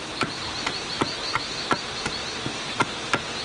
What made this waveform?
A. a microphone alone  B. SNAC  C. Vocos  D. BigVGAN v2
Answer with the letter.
A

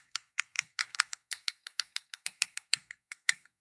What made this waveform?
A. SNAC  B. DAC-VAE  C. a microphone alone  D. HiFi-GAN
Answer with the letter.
A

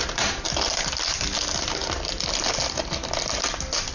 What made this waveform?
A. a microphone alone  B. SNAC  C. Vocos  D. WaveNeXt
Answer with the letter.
A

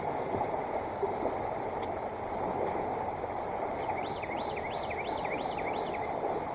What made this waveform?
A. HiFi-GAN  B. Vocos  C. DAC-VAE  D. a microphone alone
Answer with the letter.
D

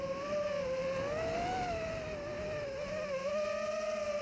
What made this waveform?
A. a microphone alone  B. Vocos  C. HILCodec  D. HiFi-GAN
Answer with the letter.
A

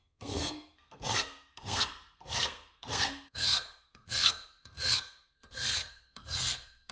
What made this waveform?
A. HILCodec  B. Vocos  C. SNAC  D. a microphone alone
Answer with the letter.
C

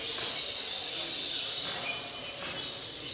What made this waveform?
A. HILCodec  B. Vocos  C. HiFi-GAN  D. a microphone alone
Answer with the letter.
D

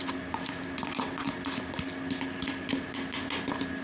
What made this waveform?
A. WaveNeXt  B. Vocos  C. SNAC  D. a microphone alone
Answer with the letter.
D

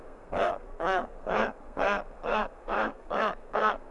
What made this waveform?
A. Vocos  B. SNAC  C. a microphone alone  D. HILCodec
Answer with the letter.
B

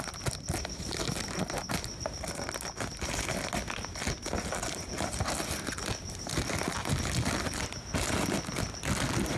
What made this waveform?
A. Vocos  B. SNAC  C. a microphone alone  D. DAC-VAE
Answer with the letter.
C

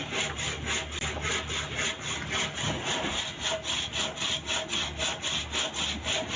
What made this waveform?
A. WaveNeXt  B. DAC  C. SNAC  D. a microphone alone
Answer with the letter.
D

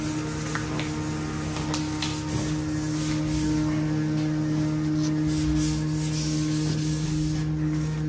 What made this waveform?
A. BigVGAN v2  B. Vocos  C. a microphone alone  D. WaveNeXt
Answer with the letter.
C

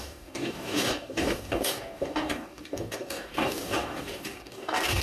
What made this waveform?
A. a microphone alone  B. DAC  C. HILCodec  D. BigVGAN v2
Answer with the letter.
B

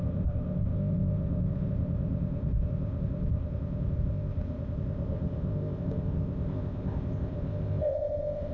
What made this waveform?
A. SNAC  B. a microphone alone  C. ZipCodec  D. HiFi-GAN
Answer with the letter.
C